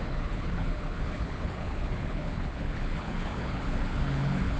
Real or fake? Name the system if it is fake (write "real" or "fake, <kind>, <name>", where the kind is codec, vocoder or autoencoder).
fake, codec, HILCodec